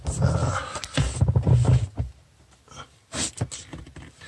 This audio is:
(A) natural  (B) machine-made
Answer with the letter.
A